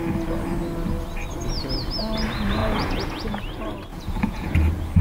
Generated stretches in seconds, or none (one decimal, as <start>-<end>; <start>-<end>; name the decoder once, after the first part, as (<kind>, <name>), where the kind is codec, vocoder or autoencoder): 2.6-3.4 (vocoder, Vocos); 3.9-4.5